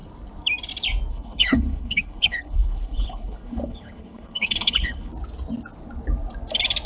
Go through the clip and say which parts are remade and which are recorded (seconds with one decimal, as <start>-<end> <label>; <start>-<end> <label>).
0.0-1.1 recorded; 1.1-5.1 remade; 5.1-6.9 recorded